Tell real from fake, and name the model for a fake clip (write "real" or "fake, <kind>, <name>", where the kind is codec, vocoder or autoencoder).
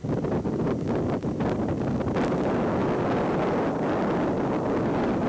real